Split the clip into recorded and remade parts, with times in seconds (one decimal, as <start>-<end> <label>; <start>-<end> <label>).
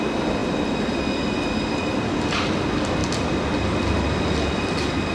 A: 0.0-5.1 recorded